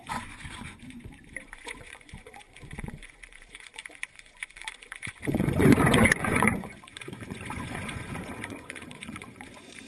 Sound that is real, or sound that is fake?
fake